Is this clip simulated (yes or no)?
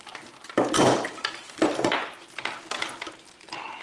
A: no